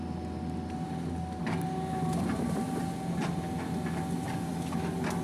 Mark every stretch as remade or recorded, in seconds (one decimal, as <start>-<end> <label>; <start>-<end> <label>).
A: 0.0-5.2 recorded